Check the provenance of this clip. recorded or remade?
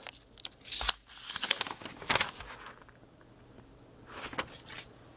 recorded